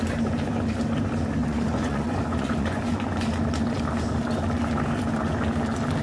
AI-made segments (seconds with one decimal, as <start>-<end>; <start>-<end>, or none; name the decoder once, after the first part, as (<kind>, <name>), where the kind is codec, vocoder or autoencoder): 1.4-2.8 (vocoder, Vocos)